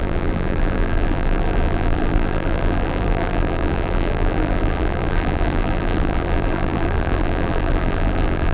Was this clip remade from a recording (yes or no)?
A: yes